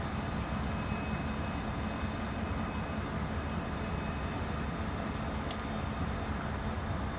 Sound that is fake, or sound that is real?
real